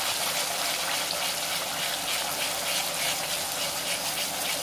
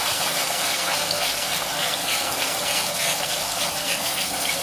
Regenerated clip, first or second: second